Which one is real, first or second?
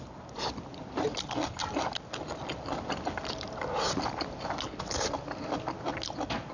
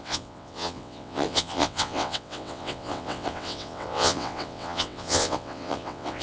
first